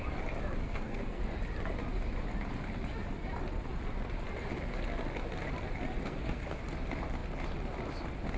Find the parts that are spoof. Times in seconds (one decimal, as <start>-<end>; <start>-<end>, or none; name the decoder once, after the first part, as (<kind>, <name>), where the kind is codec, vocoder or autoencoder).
0.6-1.2 (codec, SNAC); 6.0-6.6